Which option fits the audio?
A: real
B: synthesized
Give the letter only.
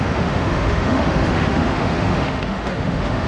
B